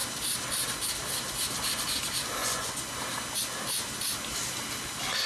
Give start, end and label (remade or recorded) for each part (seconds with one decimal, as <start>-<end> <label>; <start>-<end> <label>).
0.0-2.4 recorded; 2.4-2.9 remade; 2.9-5.3 recorded